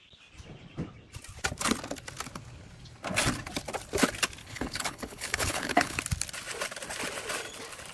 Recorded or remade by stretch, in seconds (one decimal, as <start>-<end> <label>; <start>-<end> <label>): 0.0-4.4 recorded; 4.4-6.0 remade; 6.0-7.9 recorded